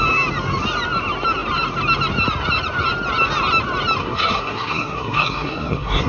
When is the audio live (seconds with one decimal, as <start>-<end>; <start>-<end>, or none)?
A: 0.0-4.0